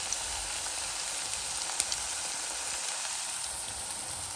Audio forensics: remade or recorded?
recorded